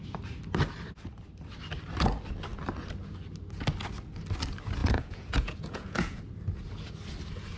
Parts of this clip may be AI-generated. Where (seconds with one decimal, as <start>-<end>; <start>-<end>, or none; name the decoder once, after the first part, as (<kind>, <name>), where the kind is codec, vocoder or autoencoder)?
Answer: 4.8-6.2 (vocoder, Vocos)